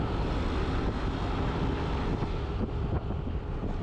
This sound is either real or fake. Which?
real